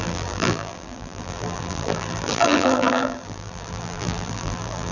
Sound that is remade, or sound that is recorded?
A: remade